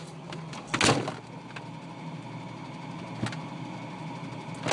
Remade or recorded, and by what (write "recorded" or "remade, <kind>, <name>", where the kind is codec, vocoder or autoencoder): recorded